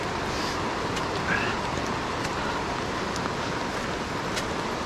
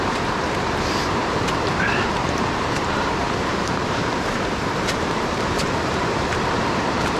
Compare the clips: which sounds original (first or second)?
first